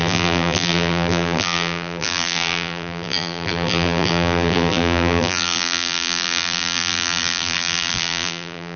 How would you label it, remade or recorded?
remade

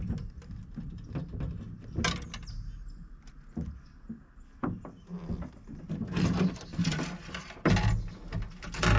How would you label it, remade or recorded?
recorded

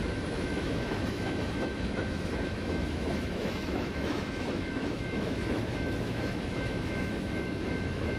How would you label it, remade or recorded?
remade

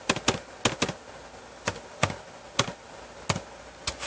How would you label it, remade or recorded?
recorded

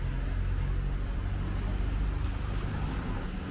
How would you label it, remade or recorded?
recorded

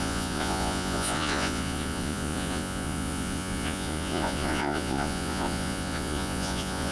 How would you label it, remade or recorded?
remade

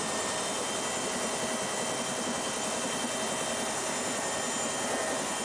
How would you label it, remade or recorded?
recorded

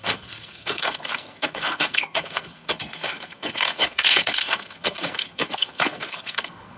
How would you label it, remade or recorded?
remade